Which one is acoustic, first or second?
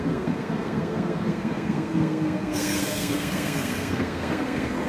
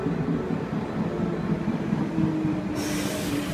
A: second